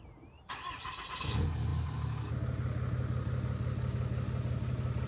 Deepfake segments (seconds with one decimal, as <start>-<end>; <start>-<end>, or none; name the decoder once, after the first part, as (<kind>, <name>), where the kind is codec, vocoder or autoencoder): none